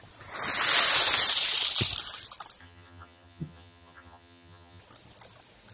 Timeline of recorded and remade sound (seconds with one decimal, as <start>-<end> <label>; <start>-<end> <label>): 0.0-2.6 recorded; 2.6-4.8 remade; 4.8-5.7 recorded